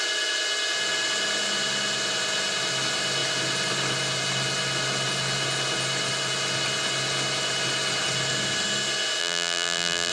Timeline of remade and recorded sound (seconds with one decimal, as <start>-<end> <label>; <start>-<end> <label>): 0.0-9.2 recorded; 9.2-10.1 remade